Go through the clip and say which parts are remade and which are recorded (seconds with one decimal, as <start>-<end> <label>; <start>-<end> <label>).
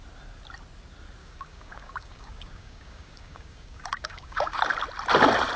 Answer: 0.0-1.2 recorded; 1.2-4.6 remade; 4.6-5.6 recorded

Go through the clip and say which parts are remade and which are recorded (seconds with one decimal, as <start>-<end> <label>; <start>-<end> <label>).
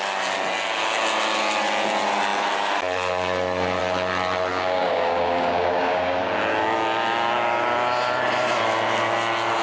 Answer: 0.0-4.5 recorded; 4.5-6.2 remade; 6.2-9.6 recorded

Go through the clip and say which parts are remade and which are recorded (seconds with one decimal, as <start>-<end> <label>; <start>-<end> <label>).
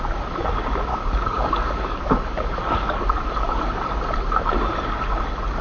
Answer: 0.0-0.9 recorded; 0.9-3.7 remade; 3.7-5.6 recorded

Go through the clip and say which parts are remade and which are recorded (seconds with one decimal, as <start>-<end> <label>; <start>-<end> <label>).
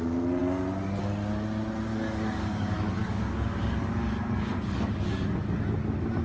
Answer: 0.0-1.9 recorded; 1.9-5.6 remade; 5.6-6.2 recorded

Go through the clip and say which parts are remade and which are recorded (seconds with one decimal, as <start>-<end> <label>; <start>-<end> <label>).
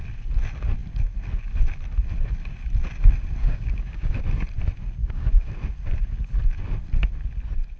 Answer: 0.0-3.4 recorded; 3.4-4.1 remade; 4.1-5.0 recorded; 5.0-5.5 remade; 5.5-7.8 recorded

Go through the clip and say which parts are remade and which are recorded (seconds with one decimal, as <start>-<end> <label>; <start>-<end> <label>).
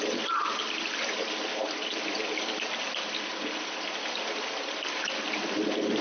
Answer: 0.0-6.0 recorded